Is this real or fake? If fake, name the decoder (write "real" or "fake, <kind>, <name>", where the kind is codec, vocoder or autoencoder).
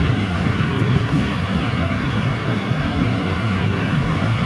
fake, codec, SNAC